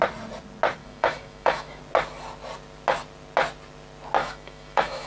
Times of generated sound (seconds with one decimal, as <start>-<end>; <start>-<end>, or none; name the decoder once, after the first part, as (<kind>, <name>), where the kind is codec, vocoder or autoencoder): 0.8-1.8 (autoencoder, DAC-VAE); 4.2-5.1